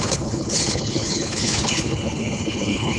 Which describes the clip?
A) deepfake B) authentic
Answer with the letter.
A